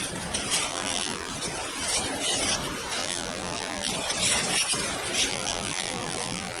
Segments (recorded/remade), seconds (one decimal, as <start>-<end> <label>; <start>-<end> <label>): 0.0-0.7 recorded; 0.7-1.3 remade; 1.3-3.0 recorded; 3.0-3.9 remade; 3.9-5.3 recorded; 5.3-6.6 remade